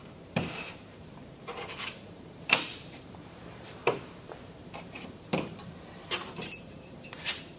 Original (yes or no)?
no